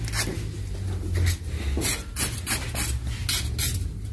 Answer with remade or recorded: recorded